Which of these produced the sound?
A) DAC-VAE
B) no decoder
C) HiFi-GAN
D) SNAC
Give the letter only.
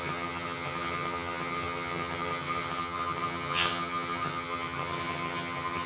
C